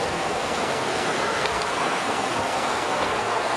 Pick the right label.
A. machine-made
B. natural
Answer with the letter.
A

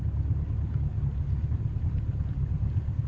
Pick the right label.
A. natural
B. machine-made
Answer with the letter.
A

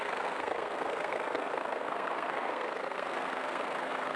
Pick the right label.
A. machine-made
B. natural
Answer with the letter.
A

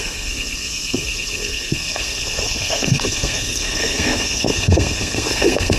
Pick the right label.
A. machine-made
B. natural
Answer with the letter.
A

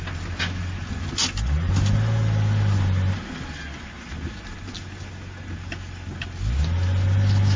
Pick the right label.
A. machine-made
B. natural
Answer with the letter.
B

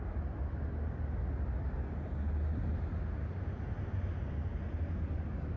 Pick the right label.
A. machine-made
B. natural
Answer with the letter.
B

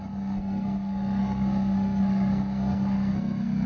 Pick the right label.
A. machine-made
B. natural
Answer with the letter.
A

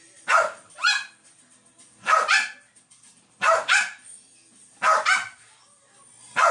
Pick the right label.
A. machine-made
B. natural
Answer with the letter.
B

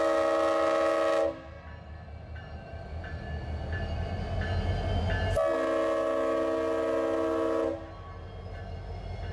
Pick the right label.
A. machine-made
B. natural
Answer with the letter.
B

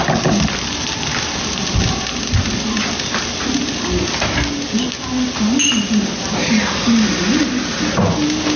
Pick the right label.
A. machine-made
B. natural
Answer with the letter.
B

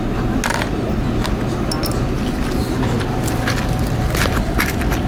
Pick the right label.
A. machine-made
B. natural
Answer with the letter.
B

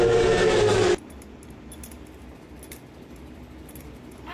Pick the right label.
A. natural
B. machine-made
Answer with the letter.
A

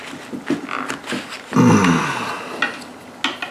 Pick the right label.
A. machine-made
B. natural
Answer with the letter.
B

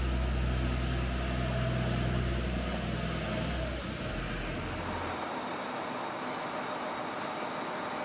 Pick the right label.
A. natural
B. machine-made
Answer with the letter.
A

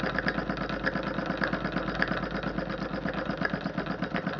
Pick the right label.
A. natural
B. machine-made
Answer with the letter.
A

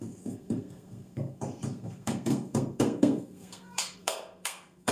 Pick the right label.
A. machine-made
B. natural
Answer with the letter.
A